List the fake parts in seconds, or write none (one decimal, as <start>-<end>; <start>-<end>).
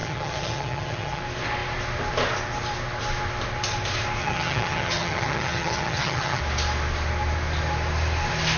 0.0-1.2; 4.2-6.4